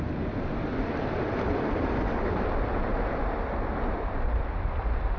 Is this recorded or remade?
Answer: recorded